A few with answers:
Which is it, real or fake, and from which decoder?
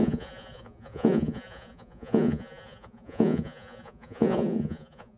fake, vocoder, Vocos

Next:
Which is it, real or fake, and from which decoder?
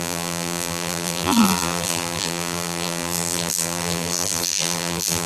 fake, vocoder, BigVGAN v2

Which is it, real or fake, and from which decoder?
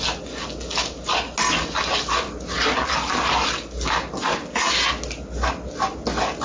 real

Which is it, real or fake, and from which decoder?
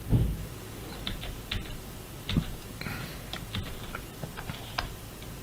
real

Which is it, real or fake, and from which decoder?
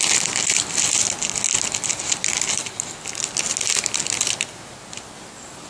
real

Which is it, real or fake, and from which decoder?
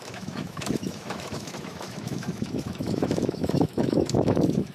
fake, autoencoder, DAC-VAE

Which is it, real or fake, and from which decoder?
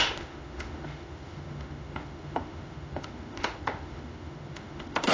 fake, autoencoder, DAC-VAE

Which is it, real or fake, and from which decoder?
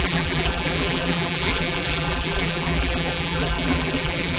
fake, vocoder, BigVGAN v2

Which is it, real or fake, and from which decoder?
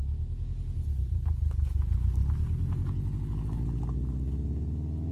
real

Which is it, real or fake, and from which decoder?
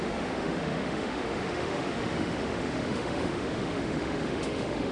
fake, autoencoder, DAC-VAE